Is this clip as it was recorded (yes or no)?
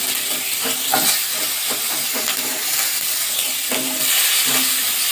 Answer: yes